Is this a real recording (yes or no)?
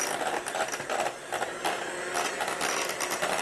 yes